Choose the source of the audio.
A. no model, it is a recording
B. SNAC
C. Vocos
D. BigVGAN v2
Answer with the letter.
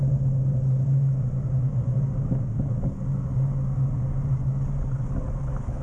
A